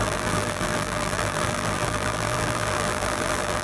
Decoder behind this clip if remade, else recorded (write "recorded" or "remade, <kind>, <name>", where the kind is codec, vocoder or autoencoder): remade, vocoder, BigVGAN v2